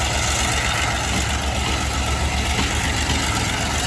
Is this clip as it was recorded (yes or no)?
yes